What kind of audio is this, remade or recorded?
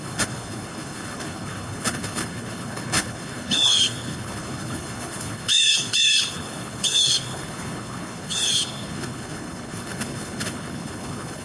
remade